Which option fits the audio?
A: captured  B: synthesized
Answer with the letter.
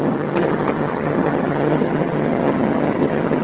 B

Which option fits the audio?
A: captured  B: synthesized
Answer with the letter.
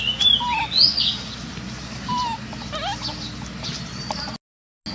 A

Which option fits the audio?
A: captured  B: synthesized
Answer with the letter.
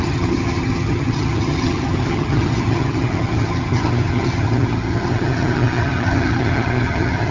B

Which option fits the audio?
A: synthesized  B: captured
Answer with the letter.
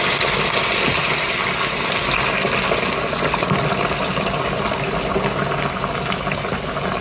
B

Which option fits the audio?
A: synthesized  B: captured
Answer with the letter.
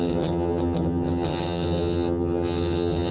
A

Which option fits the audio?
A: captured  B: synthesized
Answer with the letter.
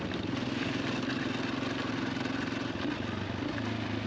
A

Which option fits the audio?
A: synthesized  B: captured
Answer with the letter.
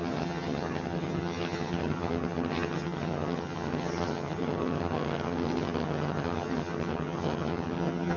A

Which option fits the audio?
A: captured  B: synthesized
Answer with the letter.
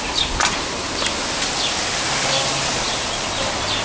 A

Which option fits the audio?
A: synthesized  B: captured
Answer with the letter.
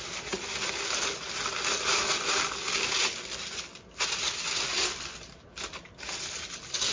B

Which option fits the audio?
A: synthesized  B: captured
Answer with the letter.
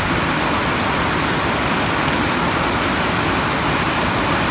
B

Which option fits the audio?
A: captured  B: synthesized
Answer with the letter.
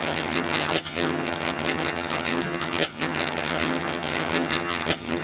B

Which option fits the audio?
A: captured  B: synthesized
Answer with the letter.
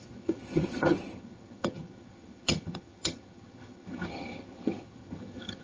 B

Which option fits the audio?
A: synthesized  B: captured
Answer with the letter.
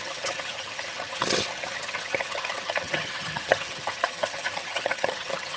A